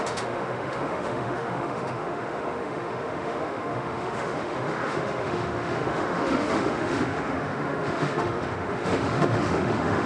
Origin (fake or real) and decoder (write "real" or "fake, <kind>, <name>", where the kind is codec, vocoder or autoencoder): fake, autoencoder, DAC-VAE